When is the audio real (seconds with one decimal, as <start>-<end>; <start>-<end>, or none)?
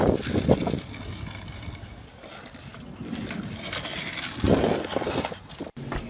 0.0-6.1